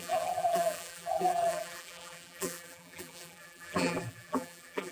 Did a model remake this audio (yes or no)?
yes